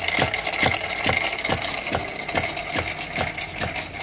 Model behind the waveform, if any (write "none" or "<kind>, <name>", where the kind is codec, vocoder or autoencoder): none